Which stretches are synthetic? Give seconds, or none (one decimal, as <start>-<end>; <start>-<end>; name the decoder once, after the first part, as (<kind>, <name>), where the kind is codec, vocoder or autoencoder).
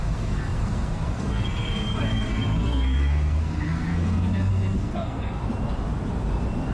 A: 0.0-5.4 (codec, SNAC)